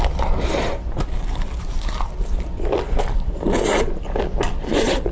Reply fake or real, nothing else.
real